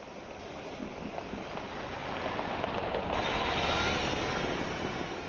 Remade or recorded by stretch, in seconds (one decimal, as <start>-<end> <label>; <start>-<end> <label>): 0.0-5.3 recorded